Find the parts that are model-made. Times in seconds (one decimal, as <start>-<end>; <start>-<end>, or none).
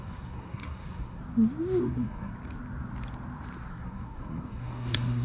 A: 0.0-1.2; 1.8-2.3; 3.7-5.2